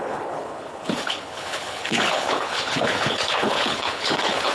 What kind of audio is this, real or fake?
fake